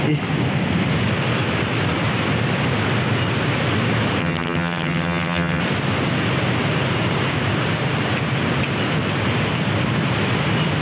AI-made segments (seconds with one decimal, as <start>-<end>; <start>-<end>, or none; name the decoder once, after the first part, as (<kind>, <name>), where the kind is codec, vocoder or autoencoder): 4.2-5.6 (vocoder, HiFi-GAN)